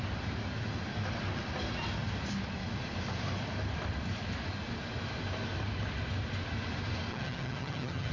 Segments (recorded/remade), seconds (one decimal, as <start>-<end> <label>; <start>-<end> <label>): 0.0-7.1 recorded; 7.1-8.1 remade